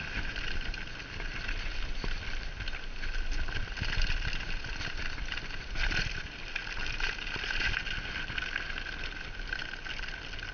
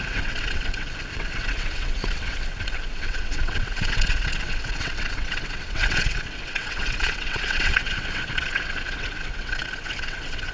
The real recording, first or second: first